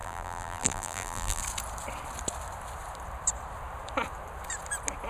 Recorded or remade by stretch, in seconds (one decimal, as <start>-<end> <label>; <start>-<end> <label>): 0.0-1.4 remade; 1.4-5.1 recorded

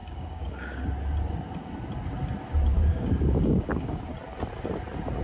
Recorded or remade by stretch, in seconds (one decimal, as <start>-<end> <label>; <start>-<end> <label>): 0.0-0.8 remade; 0.8-2.7 recorded; 2.7-4.0 remade; 4.0-5.2 recorded

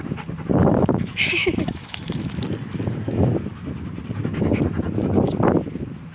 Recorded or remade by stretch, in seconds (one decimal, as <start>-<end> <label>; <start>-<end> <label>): 0.0-0.6 recorded; 0.6-2.3 remade; 2.3-6.1 recorded

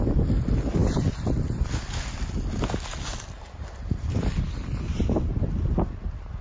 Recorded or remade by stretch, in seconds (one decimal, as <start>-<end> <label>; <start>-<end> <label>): 0.0-6.4 recorded